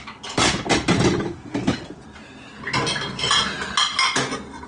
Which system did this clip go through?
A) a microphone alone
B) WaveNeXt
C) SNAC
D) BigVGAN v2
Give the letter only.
A